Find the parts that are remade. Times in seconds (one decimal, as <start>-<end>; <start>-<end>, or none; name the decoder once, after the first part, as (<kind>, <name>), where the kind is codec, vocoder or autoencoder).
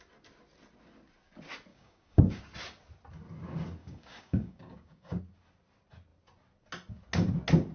1.7-2.4 (codec, DAC); 3.8-5.2